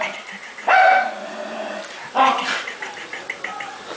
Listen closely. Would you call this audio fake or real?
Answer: real